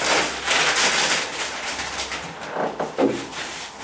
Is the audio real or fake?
real